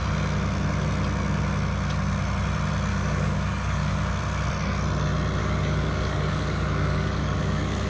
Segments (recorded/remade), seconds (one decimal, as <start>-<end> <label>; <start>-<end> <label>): 0.0-2.9 recorded; 2.9-4.1 remade; 4.1-5.4 recorded; 5.4-7.9 remade